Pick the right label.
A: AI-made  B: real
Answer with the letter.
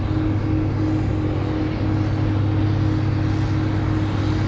B